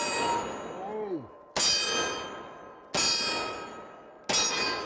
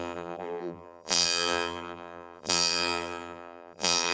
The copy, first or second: second